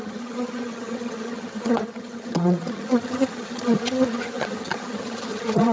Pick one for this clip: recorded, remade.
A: remade